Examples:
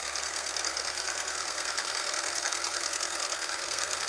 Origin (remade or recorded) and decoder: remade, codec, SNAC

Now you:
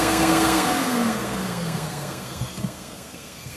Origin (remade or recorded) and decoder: remade, codec, SNAC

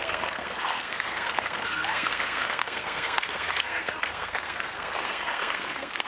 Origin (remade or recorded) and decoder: remade, codec, SNAC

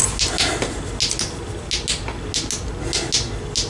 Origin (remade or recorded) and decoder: recorded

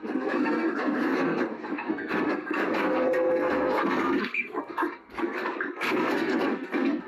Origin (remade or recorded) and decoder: remade, codec, SNAC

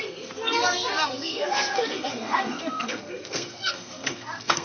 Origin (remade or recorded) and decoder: remade, codec, SNAC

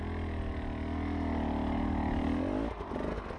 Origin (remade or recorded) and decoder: recorded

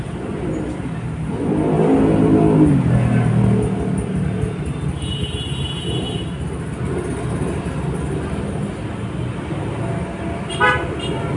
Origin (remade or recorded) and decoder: recorded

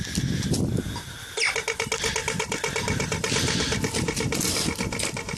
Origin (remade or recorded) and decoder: recorded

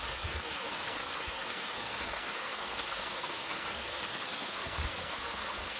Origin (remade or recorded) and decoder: remade, codec, SNAC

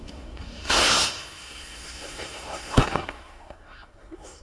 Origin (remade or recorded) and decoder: remade, codec, SNAC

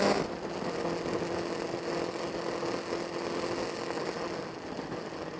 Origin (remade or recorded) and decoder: recorded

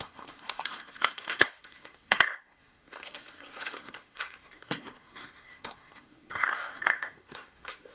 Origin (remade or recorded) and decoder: remade, codec, SNAC